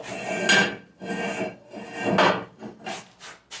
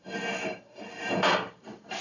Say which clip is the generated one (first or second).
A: second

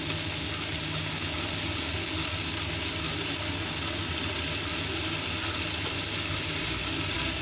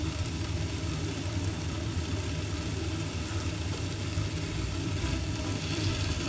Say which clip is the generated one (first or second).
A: second